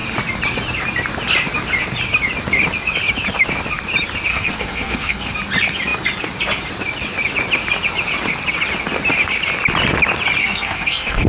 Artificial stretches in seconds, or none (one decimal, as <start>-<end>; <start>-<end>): 4.3-5.3; 10.4-11.3